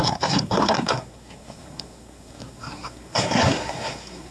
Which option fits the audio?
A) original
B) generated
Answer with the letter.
B